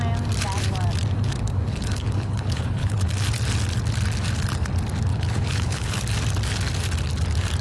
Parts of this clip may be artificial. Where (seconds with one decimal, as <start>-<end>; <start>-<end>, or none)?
1.7-3.1; 5.1-6.0